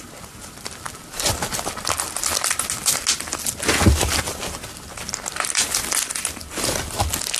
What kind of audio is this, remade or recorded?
recorded